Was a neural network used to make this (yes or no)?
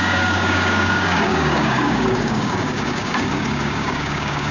yes